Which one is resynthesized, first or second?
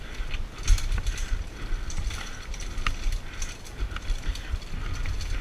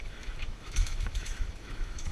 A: second